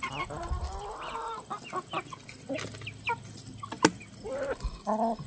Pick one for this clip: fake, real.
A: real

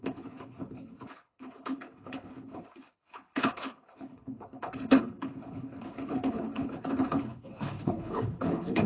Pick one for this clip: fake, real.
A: fake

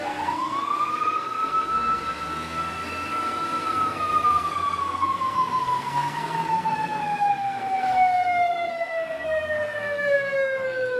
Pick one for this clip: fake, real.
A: fake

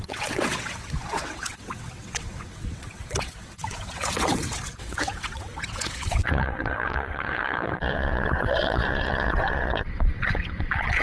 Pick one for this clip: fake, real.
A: fake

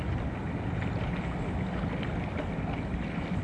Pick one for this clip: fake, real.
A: real